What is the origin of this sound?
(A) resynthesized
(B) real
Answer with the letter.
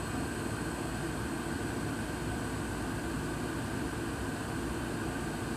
B